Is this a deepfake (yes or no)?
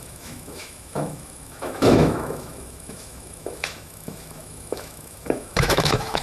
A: yes